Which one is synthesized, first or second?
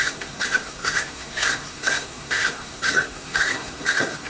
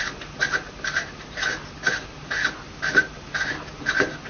first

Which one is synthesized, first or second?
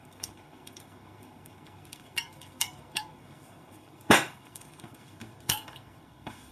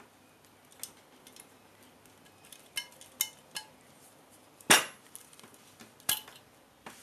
first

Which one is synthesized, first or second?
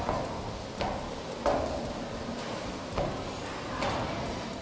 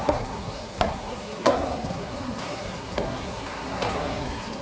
second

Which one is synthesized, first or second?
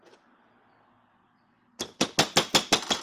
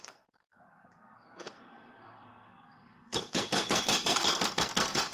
second